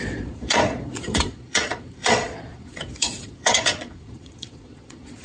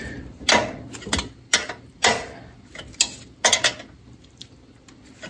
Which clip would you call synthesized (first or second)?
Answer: first